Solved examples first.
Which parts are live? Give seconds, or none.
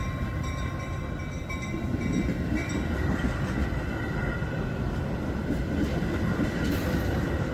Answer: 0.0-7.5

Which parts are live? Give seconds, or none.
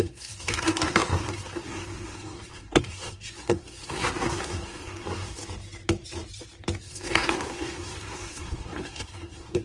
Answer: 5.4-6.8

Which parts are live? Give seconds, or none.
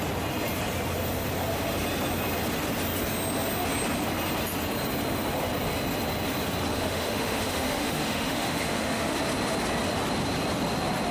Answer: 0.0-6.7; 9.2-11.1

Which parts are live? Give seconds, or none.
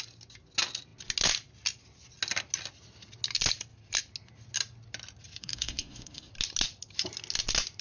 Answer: 0.0-5.4; 6.3-7.8